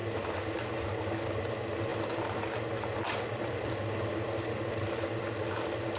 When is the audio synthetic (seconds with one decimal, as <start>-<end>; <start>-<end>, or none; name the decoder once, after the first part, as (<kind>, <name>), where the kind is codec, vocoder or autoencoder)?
none